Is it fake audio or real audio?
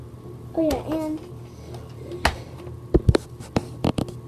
real